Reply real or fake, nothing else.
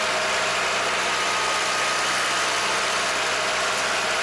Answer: real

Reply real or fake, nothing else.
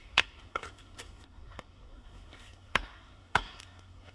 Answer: fake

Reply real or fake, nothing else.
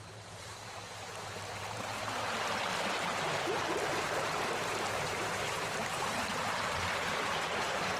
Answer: fake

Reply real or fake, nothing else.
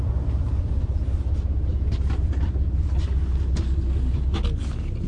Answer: real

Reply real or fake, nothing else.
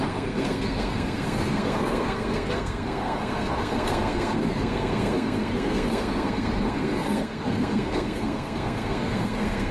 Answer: fake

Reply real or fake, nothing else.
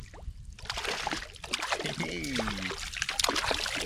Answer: real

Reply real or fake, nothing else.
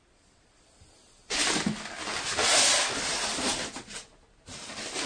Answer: real